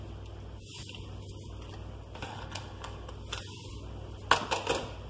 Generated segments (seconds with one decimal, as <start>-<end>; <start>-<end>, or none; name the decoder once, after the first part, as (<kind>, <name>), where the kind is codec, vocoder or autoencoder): 2.3-3.1 (codec, HILCodec)